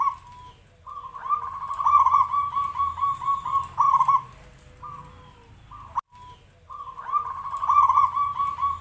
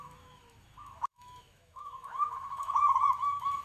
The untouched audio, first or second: first